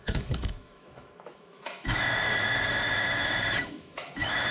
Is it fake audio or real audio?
fake